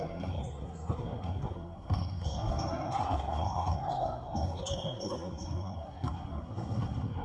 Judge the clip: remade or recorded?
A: remade